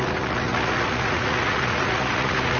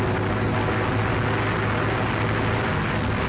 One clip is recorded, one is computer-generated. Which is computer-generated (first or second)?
first